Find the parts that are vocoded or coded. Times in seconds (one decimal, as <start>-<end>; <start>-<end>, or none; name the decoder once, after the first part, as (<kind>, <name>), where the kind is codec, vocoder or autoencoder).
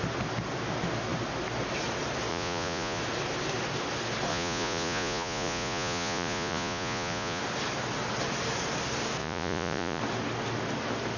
2.3-3.0 (vocoder, Vocos); 4.3-7.4; 9.2-10.0